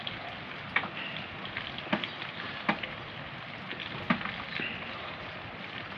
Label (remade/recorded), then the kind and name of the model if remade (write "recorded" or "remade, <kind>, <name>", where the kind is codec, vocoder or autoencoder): recorded